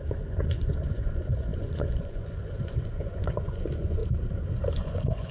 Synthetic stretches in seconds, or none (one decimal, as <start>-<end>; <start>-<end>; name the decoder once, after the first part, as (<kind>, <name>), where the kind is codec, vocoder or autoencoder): 0.0-4.0 (vocoder, Vocos); 4.7-5.3